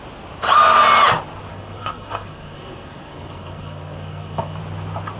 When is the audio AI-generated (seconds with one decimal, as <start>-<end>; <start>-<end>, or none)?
1.5-4.6